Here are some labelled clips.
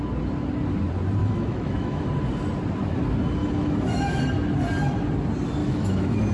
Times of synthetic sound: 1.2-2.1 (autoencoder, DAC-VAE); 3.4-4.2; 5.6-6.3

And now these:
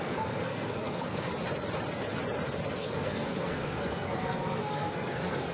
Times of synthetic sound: 0.0-1.3 (codec, SNAC); 2.8-5.5

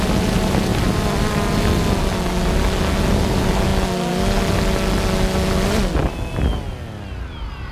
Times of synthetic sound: none

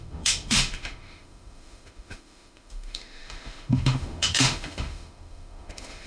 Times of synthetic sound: 0.0-6.1 (autoencoder, DAC-VAE)

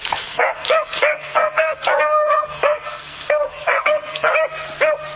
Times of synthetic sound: 0.0-4.3 (codec, SNAC)